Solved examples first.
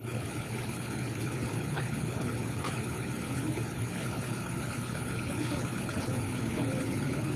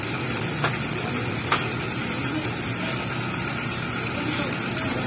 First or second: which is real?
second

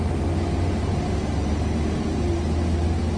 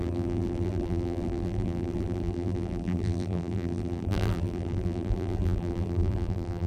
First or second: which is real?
first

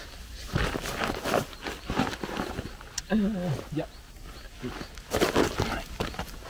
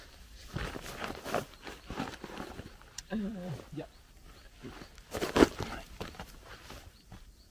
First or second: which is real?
first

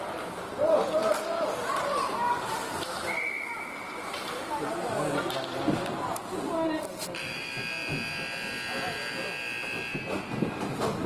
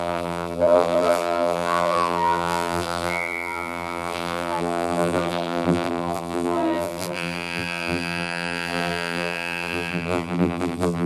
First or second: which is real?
first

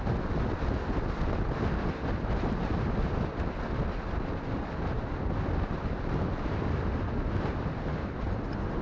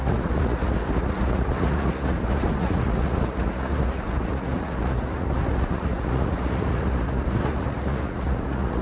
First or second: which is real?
first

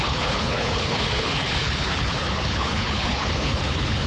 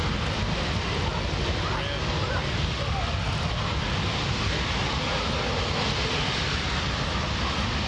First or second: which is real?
second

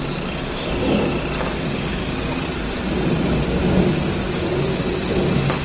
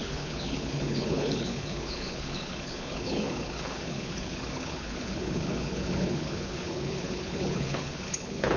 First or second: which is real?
first